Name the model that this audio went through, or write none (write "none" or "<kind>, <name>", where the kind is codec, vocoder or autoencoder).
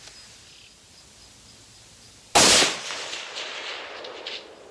none